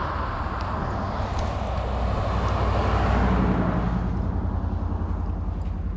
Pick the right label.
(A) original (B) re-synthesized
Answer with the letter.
A